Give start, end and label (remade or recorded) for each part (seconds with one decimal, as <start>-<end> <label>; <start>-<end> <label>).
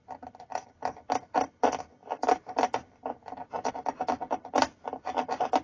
0.0-5.6 recorded